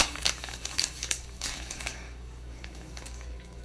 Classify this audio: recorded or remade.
remade